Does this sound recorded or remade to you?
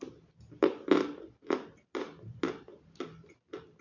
recorded